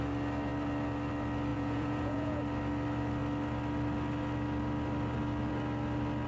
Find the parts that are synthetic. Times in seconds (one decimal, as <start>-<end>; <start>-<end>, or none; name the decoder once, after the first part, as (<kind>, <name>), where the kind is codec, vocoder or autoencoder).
1.5-2.4 (vocoder, Vocos)